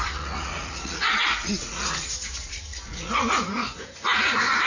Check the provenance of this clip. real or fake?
fake